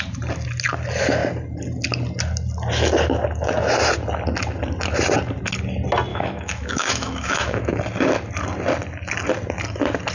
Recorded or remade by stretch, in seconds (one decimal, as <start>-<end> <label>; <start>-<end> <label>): 0.0-6.1 recorded; 6.1-7.8 remade; 7.8-10.1 recorded